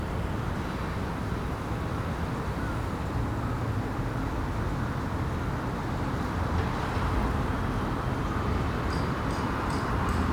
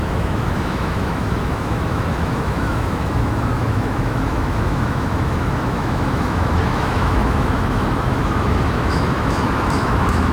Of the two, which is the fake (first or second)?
second